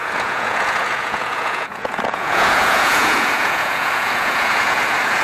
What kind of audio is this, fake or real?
fake